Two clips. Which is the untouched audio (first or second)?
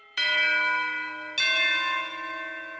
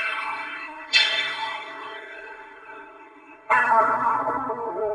first